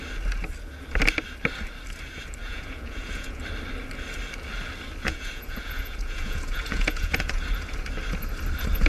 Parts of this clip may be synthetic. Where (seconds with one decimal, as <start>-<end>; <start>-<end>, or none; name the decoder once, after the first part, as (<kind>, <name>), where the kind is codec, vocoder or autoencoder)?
2.4-3.4 (vocoder, Vocos); 5.0-7.4